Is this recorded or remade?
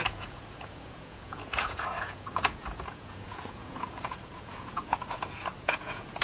remade